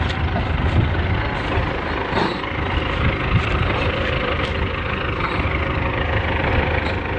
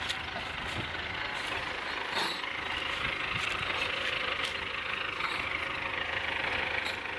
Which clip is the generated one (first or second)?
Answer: first